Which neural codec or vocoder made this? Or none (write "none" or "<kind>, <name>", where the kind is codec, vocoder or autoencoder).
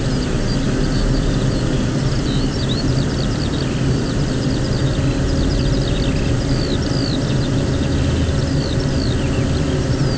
none